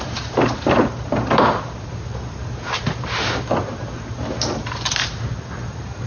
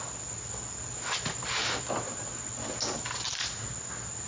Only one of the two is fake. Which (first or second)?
first